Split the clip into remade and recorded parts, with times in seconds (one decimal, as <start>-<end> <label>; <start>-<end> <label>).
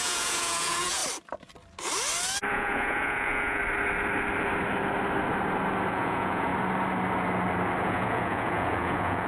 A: 0.0-1.0 remade; 1.0-2.5 recorded; 2.5-3.6 remade; 3.6-5.9 recorded; 5.9-6.5 remade; 6.5-7.8 recorded; 7.8-9.3 remade